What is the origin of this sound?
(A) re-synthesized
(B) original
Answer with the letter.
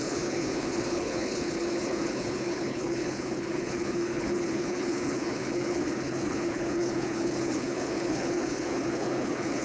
A